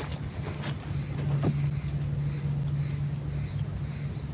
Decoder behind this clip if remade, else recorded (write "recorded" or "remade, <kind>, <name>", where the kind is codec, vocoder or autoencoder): recorded